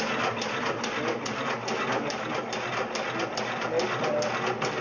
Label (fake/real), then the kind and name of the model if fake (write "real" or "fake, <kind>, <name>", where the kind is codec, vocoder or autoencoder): real